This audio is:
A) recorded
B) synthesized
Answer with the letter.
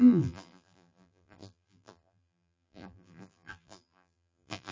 B